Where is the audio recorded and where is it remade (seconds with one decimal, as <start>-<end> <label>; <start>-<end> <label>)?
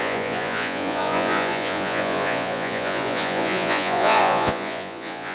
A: 0.0-5.3 remade